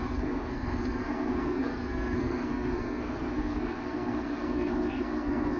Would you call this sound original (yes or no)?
no